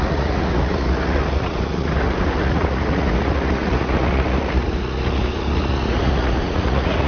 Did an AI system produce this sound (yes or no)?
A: yes